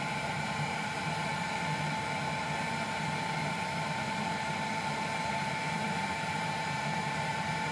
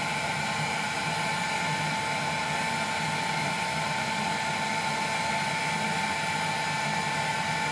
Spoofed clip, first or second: first